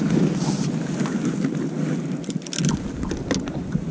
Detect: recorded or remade recorded